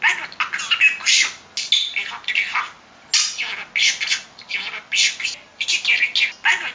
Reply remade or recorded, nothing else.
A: recorded